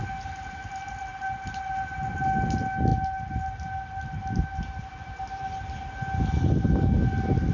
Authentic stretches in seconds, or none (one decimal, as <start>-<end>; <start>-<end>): 0.0-7.5